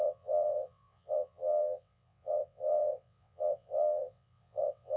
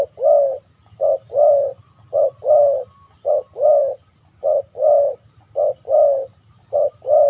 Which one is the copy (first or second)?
first